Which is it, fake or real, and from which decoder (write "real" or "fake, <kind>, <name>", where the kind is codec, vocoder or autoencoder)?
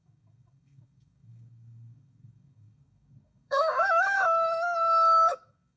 fake, codec, DAC